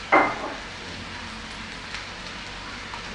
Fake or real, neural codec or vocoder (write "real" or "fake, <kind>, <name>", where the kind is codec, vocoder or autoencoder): real